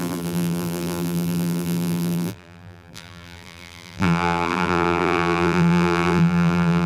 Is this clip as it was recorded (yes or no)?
no